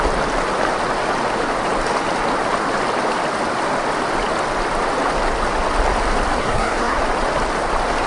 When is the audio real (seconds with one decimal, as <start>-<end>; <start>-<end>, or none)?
0.0-6.4; 7.0-8.1